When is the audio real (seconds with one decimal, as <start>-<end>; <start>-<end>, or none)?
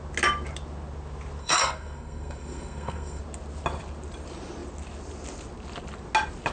0.0-1.4; 3.2-6.5